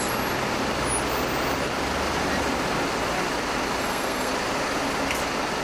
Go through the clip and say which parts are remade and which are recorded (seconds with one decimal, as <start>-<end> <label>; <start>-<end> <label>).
0.0-3.8 recorded; 3.8-4.3 remade; 4.3-5.6 recorded